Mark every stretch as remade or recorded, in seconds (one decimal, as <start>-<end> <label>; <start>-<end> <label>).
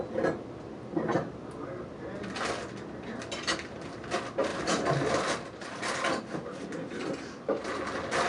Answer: 0.0-4.5 recorded; 4.5-6.0 remade; 6.0-8.3 recorded